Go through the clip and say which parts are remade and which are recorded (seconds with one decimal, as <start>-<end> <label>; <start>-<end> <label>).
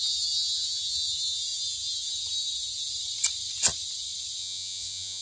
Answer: 0.0-4.4 recorded; 4.4-5.2 remade